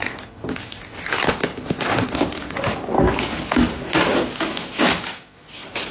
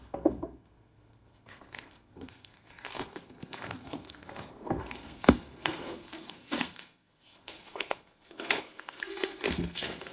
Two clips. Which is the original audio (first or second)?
first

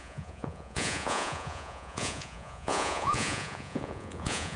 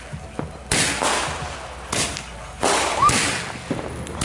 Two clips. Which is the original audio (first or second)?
second